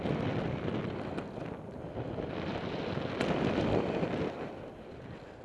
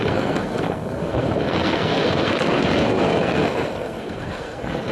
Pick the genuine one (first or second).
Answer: first